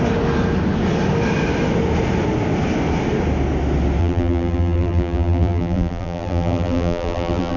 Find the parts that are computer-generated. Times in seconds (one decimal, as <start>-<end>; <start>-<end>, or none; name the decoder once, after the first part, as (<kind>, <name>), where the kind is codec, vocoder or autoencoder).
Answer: 4.0-7.6 (vocoder, BigVGAN v2)